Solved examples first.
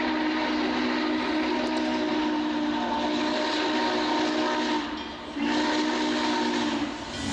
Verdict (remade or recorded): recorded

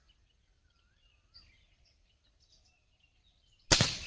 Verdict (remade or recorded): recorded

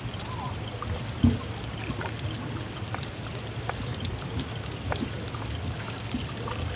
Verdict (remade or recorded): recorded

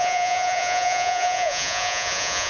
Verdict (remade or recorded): remade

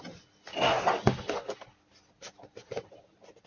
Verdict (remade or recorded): recorded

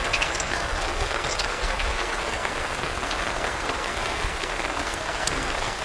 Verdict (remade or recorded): remade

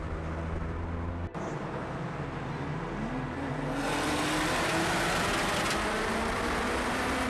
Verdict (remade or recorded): recorded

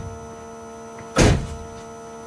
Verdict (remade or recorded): recorded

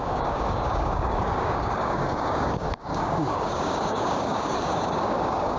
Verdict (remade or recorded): remade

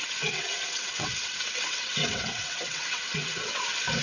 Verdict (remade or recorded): remade